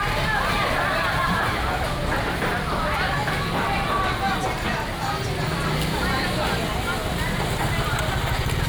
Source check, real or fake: real